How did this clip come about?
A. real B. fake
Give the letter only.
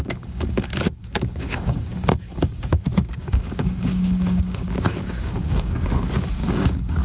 B